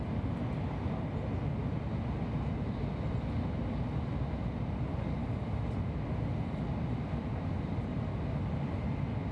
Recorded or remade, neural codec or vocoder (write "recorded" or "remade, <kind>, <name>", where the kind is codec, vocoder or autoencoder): recorded